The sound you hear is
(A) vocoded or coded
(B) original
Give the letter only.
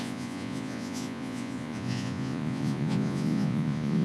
A